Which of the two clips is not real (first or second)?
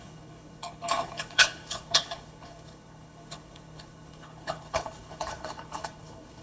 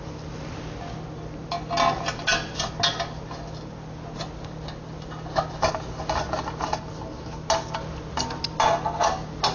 first